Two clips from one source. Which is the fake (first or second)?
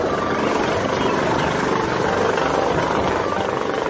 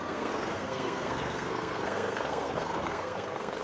second